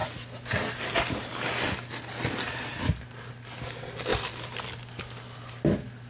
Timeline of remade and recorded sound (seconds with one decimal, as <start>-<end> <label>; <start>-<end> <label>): 0.0-4.1 recorded; 4.1-5.0 remade; 5.0-6.1 recorded